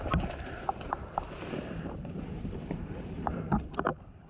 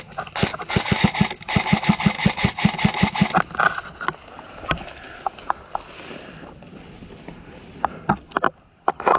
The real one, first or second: second